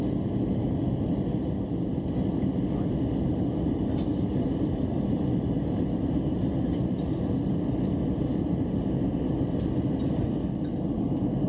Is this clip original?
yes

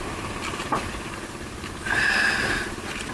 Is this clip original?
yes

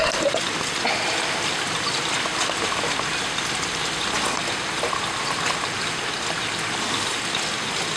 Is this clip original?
yes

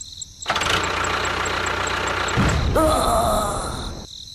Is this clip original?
yes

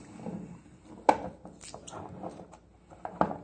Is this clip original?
yes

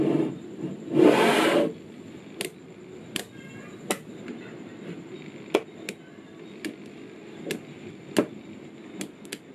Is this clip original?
yes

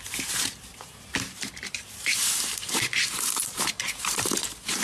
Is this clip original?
no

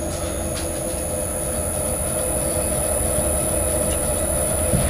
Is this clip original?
yes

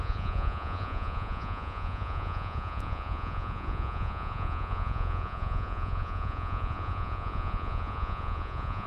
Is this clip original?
no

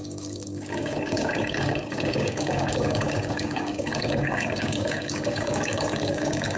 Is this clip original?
no